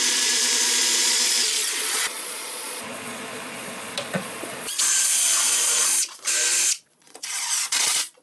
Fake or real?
fake